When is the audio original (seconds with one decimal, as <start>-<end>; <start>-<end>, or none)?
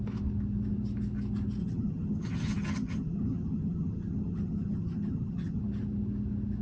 0.0-1.6; 5.6-6.6